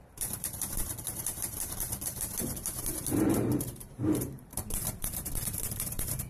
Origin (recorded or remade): remade